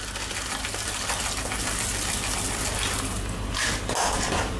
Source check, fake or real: real